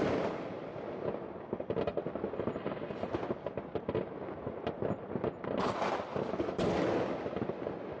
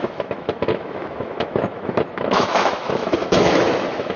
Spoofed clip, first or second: second